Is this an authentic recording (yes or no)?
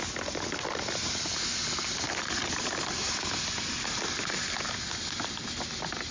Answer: yes